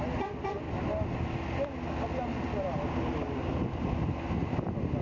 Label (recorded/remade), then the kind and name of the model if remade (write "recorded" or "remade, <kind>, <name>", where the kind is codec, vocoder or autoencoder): recorded